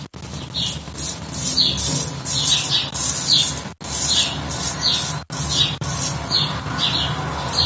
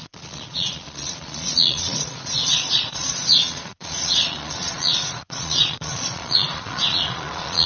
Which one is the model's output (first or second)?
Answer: second